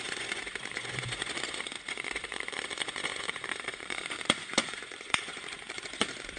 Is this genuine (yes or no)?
no